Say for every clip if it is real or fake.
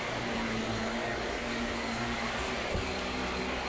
fake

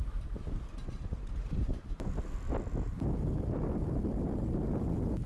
real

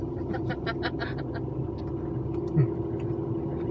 real